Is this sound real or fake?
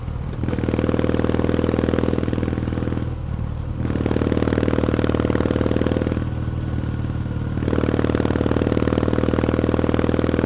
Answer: real